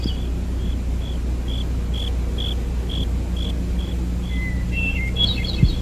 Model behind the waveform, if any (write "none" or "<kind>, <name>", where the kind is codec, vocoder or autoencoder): none